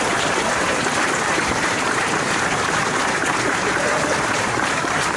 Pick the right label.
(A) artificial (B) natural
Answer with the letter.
A